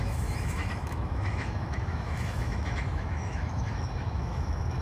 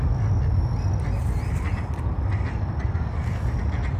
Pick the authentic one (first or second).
second